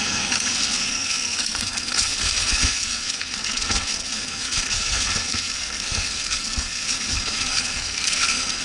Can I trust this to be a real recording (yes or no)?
no